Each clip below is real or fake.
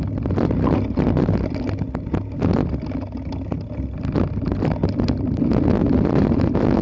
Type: real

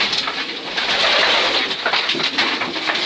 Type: real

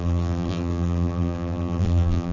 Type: fake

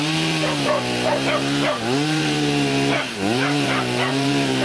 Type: fake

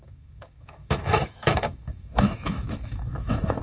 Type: fake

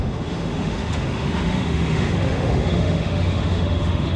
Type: fake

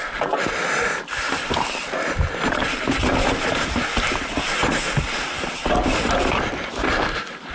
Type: real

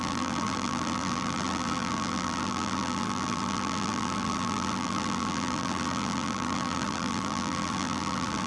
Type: fake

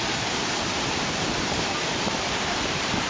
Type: fake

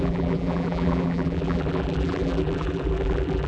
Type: fake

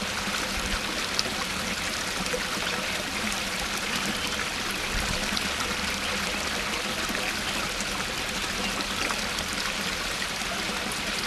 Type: real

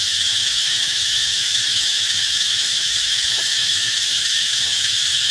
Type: fake